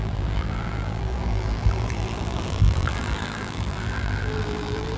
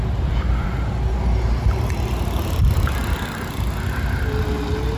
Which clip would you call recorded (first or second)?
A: second